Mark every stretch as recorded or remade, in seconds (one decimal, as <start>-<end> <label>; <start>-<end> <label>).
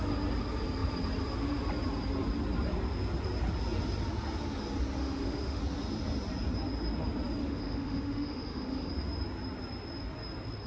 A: 0.0-5.0 recorded; 5.0-5.6 remade; 5.6-7.4 recorded; 7.4-8.9 remade; 8.9-10.7 recorded